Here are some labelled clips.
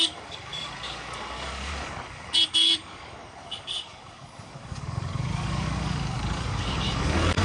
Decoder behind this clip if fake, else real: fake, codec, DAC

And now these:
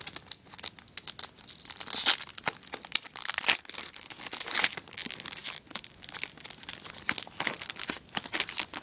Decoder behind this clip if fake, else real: real